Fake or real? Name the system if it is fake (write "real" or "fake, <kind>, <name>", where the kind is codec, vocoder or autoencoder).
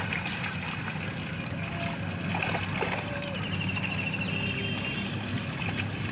real